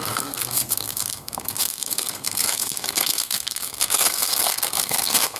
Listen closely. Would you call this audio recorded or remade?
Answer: remade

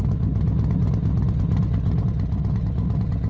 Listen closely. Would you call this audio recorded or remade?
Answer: recorded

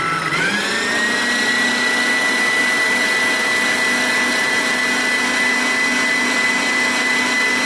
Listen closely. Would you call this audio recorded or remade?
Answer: recorded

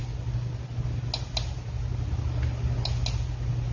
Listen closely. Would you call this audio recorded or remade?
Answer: recorded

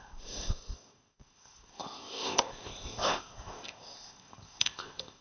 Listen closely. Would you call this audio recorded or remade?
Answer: remade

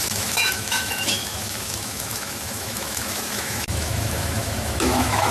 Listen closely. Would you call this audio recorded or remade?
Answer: remade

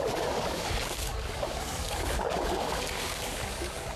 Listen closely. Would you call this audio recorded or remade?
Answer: remade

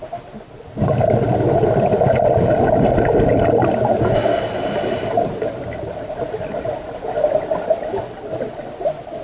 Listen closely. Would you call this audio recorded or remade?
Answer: recorded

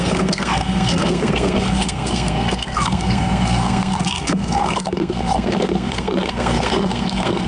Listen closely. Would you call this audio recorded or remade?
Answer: remade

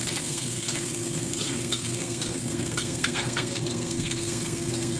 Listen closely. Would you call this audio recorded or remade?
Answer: remade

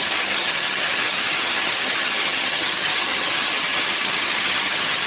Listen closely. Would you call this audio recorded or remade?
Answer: remade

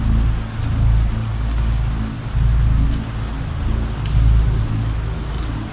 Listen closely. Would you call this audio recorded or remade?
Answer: recorded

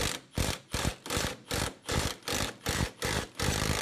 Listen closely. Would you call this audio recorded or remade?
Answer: recorded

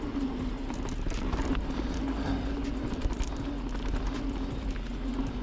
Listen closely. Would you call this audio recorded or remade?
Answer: recorded